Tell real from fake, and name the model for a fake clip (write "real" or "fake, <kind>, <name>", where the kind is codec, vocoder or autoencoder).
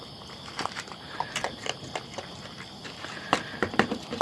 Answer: fake, vocoder, BigVGAN v2